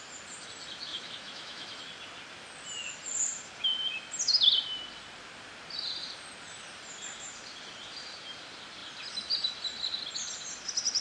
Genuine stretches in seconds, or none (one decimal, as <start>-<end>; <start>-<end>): 0.0-0.9; 1.8-11.0